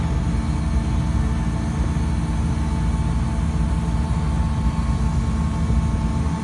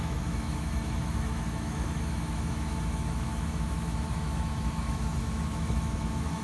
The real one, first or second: first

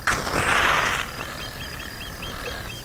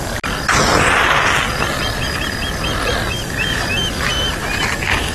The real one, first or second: second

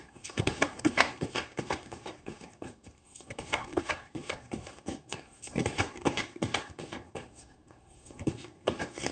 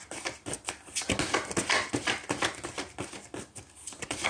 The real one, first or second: second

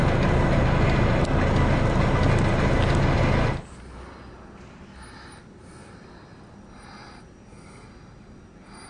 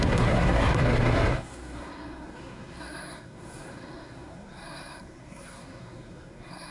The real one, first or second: first